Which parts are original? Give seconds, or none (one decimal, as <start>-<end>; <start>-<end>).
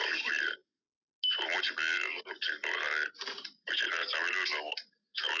0.0-5.4